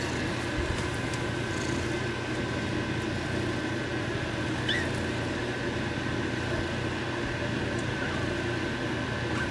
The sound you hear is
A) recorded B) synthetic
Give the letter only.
A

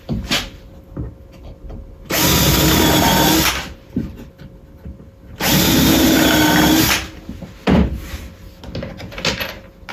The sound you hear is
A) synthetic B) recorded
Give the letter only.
B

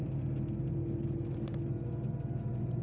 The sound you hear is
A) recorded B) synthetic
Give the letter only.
A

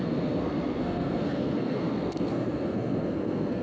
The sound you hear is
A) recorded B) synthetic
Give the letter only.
B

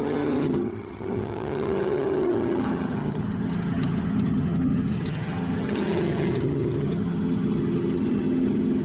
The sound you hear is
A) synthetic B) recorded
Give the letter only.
A